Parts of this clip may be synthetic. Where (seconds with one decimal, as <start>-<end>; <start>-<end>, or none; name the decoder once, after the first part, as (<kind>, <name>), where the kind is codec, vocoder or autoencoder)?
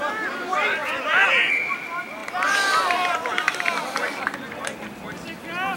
2.2-4.2 (vocoder, BigVGAN v2)